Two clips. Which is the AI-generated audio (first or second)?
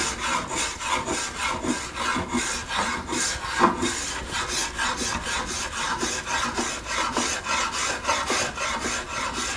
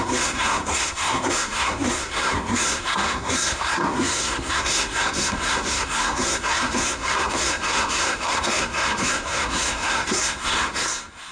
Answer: second